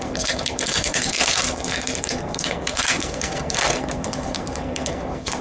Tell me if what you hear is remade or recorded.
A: remade